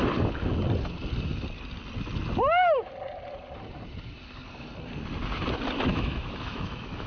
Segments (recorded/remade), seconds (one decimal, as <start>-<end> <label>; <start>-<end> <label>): 0.0-5.9 recorded; 5.9-7.1 remade